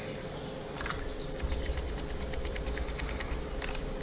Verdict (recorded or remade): recorded